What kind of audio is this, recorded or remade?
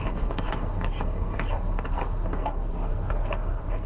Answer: remade